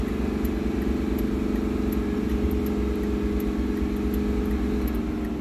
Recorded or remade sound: recorded